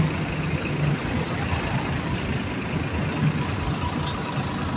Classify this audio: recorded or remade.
recorded